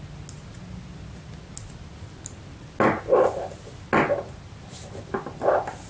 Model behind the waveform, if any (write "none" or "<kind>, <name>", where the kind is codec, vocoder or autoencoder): none